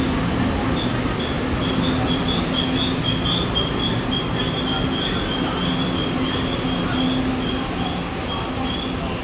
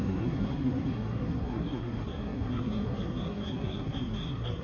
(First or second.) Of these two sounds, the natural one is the first